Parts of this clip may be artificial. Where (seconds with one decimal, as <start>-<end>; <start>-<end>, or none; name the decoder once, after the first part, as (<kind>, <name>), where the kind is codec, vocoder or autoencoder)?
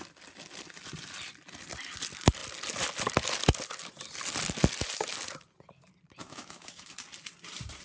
6.2-6.9 (autoencoder, DAC-VAE)